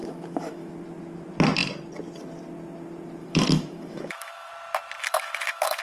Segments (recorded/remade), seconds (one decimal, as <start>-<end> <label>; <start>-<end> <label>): 0.0-0.7 remade; 0.7-3.2 recorded; 3.2-4.5 remade; 4.5-5.0 recorded; 5.0-5.8 remade